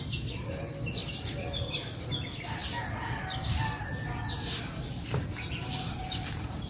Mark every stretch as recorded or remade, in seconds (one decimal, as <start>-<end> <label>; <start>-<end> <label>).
0.0-1.0 recorded; 1.0-2.1 remade; 2.1-6.7 recorded